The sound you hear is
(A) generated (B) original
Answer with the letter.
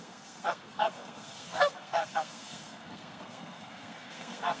A